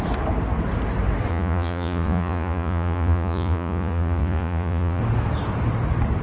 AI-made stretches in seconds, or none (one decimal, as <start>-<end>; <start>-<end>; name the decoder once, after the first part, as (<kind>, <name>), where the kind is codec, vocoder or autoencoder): 1.3-5.0 (vocoder, Vocos)